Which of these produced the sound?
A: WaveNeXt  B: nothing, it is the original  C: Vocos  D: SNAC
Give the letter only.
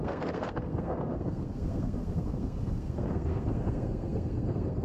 D